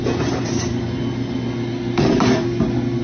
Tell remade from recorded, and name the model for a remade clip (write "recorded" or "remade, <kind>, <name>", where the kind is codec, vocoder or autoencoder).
recorded